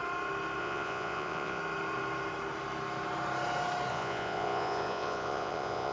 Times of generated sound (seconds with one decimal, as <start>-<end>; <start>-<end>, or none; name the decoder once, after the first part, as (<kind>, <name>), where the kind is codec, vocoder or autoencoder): 0.6-1.6 (vocoder, Vocos); 3.9-5.9